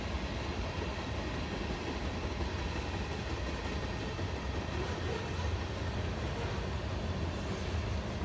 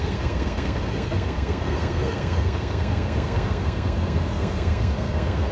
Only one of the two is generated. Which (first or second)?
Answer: second